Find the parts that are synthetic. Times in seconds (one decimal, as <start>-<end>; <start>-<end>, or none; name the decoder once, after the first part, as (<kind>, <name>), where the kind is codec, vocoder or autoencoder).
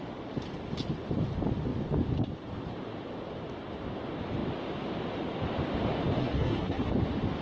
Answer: 6.2-6.9 (codec, SNAC)